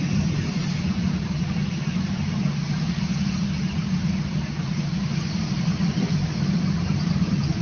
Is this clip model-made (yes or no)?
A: no